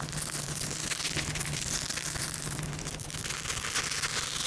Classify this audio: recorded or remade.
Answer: recorded